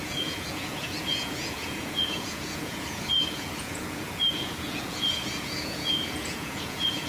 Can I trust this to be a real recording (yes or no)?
no